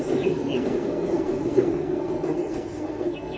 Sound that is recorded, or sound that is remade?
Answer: remade